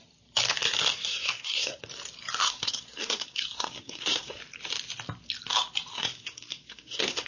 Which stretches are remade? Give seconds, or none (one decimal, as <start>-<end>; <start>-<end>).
1.1-1.8; 2.4-4.4; 5.9-7.3